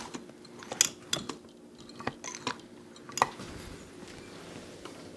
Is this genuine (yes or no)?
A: yes